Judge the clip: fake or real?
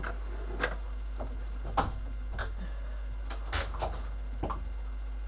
real